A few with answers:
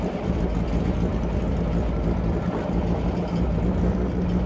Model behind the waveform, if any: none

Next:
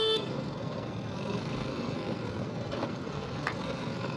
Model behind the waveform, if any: codec, SNAC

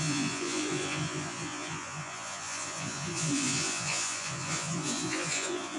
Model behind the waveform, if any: vocoder, Vocos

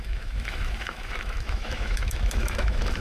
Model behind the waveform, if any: autoencoder, DAC-VAE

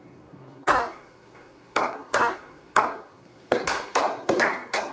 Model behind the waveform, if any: codec, SNAC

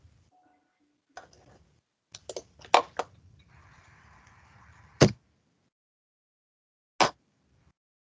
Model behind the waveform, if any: none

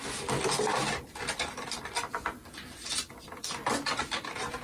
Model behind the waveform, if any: none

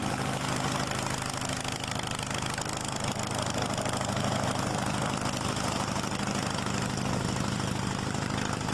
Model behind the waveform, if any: none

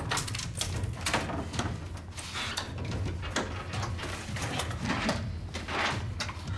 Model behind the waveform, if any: none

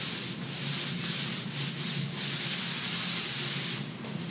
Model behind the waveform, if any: none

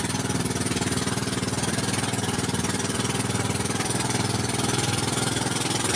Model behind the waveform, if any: vocoder, BigVGAN v2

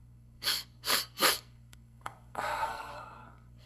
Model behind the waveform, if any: codec, SNAC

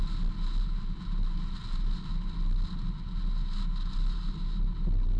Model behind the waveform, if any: none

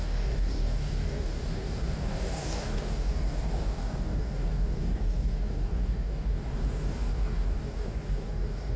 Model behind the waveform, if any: codec, DAC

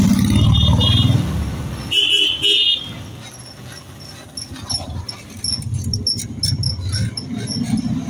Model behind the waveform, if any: none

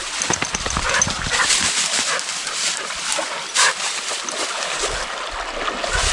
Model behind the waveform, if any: vocoder, BigVGAN v2